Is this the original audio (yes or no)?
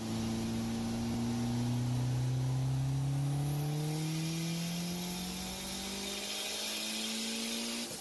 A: yes